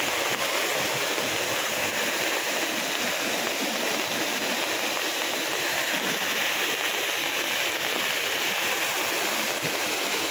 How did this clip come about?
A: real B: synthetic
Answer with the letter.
A